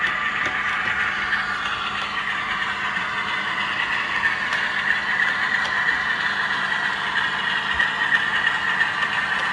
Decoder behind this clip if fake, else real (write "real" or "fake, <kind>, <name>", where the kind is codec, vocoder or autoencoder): real